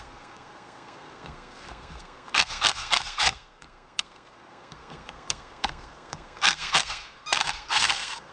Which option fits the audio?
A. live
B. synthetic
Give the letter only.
B